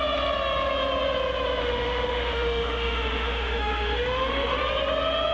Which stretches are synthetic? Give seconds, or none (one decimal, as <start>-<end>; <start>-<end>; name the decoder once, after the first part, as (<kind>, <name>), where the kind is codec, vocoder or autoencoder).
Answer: 1.6-4.6 (autoencoder, DAC-VAE)